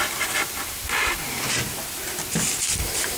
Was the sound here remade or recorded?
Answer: remade